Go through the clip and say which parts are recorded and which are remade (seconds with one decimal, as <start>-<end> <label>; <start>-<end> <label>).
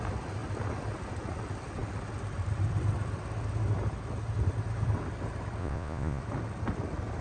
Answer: 0.0-5.6 recorded; 5.6-6.2 remade; 6.2-7.2 recorded